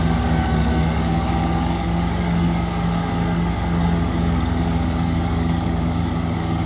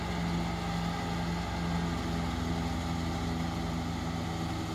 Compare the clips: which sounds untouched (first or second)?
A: second